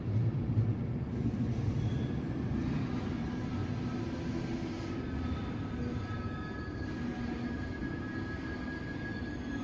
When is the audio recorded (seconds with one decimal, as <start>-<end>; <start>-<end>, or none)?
0.0-7.8; 8.4-9.6